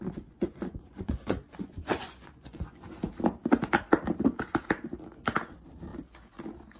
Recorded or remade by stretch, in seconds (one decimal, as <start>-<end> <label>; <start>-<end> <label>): 0.0-2.8 remade; 2.8-6.8 recorded